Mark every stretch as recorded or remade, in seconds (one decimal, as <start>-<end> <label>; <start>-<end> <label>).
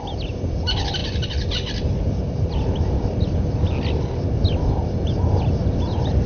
0.0-6.3 recorded